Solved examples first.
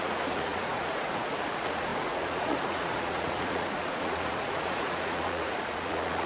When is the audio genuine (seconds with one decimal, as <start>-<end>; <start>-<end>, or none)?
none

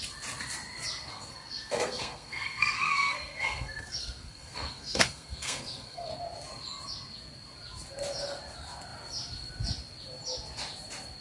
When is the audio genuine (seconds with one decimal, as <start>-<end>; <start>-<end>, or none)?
0.0-1.1; 6.1-11.2

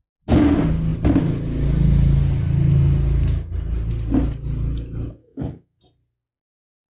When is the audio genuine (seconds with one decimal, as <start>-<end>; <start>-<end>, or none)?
0.0-5.2; 5.8-6.9

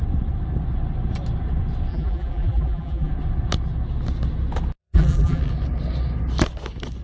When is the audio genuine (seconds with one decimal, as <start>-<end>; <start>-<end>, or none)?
0.0-1.9; 3.1-4.8; 5.4-7.0